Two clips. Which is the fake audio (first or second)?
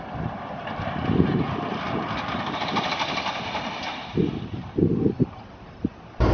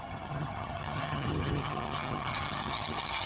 second